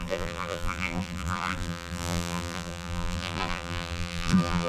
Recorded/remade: remade